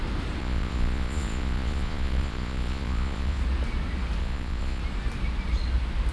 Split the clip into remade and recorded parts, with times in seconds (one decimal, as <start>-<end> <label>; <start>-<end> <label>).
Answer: 0.0-0.4 recorded; 0.4-3.4 remade; 3.4-4.2 recorded; 4.2-4.8 remade; 4.8-6.1 recorded